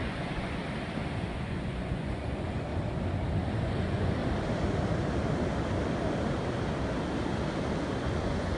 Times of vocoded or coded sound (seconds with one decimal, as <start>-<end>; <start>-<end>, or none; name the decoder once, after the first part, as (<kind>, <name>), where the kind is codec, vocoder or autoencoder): 0.0-0.6 (vocoder, Vocos); 1.2-2.7; 3.6-4.2; 8.0-8.6